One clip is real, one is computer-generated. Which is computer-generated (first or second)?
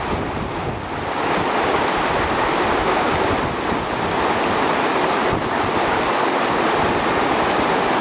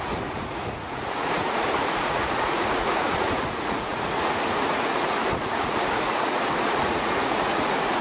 second